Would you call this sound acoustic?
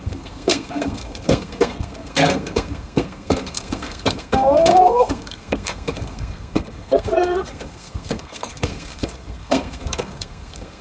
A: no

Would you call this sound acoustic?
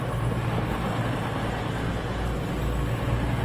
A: yes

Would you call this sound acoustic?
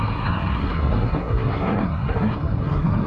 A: no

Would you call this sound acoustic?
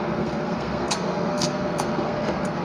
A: no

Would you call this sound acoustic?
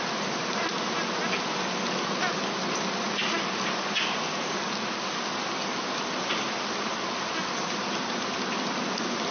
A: yes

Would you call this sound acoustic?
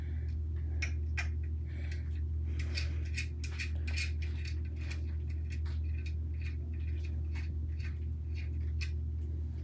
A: yes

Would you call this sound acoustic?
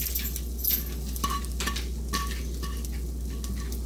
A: yes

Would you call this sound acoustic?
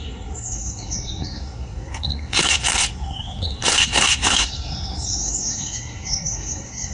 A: no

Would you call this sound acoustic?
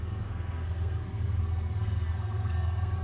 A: no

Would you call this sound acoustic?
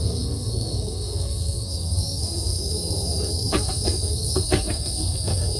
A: no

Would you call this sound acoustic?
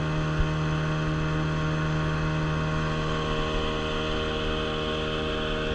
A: yes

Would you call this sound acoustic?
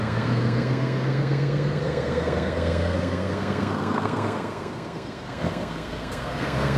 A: no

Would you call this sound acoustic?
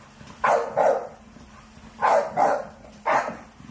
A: yes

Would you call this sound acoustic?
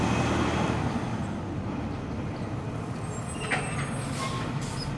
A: yes